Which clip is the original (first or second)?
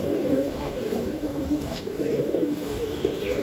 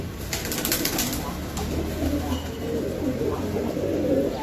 second